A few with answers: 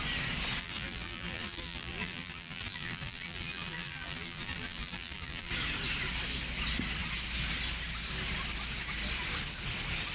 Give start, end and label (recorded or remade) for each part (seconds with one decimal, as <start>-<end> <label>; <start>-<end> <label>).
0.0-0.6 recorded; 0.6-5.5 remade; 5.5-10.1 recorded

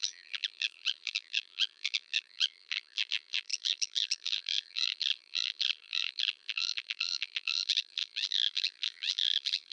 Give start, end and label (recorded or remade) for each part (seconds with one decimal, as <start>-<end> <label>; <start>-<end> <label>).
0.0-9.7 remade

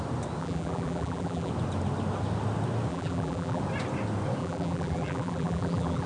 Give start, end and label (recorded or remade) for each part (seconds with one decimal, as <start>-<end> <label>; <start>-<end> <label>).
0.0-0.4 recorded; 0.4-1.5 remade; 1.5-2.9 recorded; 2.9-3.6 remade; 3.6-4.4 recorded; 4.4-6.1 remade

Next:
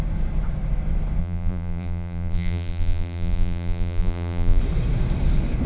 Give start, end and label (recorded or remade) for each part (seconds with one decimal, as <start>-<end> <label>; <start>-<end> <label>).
0.0-1.2 recorded; 1.2-4.6 remade; 4.6-5.7 recorded